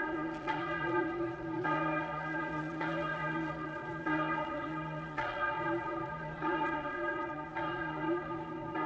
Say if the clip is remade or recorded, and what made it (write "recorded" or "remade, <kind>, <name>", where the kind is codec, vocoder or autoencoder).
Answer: remade, vocoder, Vocos